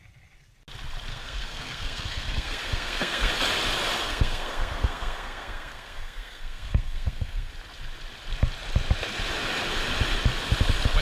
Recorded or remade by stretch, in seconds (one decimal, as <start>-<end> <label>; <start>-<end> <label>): 0.0-1.1 recorded; 1.1-3.3 remade; 3.3-4.0 recorded; 4.0-7.5 remade; 7.5-11.0 recorded